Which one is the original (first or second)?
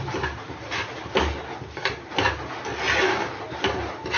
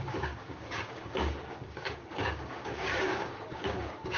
first